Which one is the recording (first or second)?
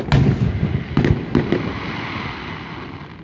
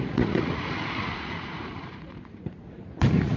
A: first